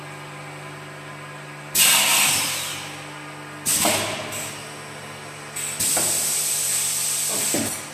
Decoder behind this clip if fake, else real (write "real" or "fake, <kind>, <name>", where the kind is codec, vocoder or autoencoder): real